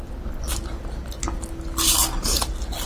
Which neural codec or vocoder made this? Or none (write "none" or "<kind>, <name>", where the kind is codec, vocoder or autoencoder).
none